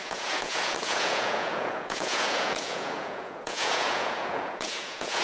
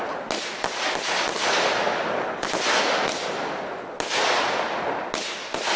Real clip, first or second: second